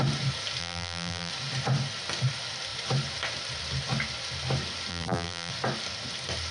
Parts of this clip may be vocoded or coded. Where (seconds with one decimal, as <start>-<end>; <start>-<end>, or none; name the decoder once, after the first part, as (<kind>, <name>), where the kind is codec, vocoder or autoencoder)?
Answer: 0.6-1.3 (vocoder, BigVGAN v2); 4.9-5.5